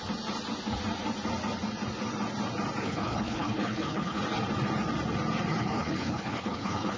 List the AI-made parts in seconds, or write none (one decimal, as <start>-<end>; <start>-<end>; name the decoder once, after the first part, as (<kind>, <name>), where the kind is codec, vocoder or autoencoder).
2.8-4.2 (codec, HILCodec); 5.5-7.0